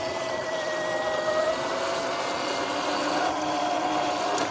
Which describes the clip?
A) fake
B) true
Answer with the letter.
B